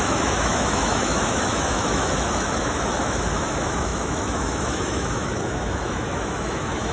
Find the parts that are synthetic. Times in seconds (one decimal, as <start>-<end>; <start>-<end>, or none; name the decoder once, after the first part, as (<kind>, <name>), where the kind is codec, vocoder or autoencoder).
0.0-6.9 (autoencoder, DAC-VAE)